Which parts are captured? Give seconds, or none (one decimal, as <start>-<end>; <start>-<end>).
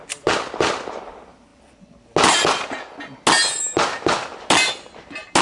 0.0-5.4